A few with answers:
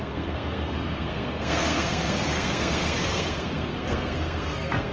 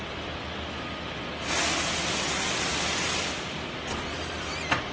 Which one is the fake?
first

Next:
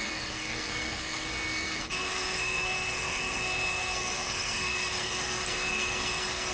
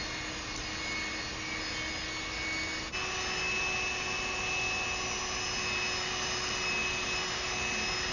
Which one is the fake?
first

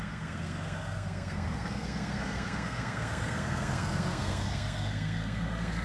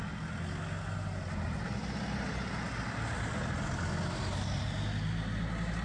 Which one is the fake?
first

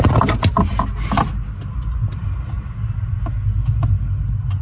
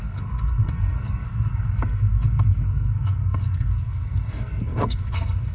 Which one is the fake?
second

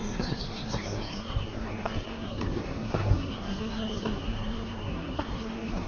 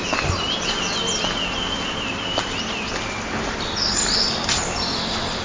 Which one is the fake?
first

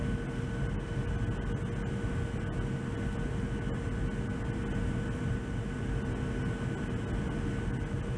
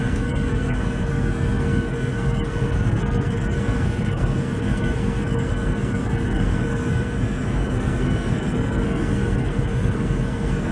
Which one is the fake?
second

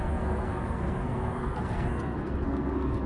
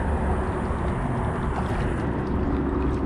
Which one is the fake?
first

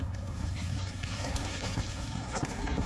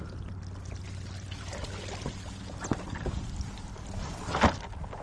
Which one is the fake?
first